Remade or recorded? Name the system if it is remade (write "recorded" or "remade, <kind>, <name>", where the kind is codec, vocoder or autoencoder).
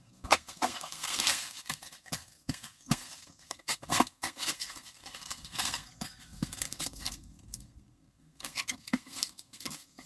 remade, codec, SNAC